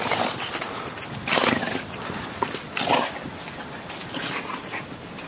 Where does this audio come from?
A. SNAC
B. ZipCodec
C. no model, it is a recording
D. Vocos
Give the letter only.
C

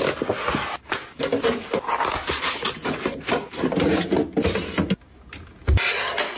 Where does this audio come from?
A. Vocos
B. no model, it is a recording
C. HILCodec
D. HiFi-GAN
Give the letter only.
B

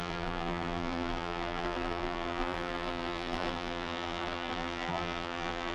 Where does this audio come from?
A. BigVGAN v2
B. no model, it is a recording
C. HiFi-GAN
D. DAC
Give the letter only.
A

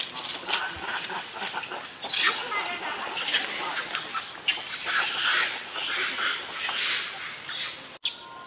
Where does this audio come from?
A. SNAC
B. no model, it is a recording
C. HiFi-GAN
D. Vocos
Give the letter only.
B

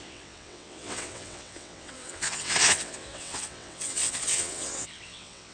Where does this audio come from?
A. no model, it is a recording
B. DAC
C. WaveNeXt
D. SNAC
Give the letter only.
C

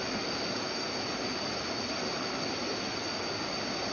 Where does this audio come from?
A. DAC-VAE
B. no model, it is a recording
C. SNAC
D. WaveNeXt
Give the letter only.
B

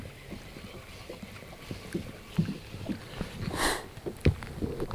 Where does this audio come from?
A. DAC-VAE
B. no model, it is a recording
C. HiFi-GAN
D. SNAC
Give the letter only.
B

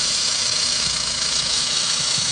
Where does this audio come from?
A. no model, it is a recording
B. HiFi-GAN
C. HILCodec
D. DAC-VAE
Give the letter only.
D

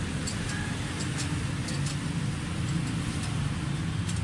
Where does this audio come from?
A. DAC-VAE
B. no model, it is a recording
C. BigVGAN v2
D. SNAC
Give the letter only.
B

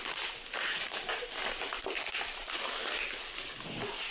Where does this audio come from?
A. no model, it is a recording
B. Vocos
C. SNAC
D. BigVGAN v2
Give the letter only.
A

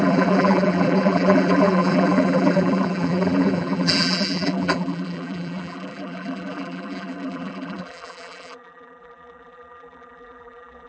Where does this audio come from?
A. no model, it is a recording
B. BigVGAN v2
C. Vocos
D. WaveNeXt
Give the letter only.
B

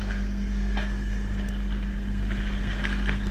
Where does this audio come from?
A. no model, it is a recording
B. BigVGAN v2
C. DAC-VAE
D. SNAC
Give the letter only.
D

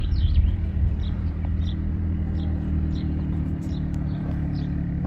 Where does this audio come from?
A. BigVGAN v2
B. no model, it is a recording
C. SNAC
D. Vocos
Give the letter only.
A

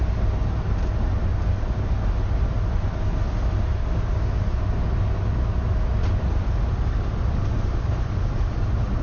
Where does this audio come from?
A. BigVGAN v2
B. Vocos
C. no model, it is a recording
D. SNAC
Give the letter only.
C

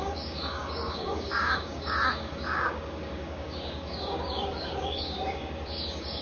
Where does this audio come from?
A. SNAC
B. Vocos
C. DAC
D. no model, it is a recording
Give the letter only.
C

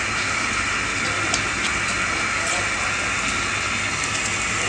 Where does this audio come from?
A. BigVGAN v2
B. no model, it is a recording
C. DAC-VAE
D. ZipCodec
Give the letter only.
B